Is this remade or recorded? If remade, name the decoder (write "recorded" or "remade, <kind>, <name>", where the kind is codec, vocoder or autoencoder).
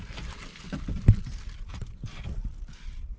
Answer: recorded